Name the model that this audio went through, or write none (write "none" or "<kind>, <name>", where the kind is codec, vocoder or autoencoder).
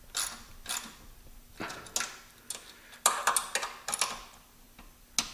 none